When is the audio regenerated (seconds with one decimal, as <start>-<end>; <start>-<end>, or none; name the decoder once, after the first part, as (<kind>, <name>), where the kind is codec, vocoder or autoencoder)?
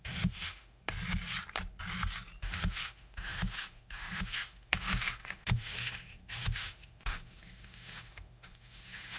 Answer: 0.0-0.8 (autoencoder, DAC-VAE); 2.4-9.2